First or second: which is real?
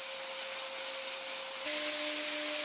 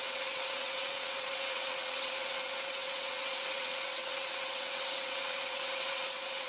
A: first